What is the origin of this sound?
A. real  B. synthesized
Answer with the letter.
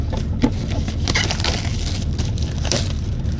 A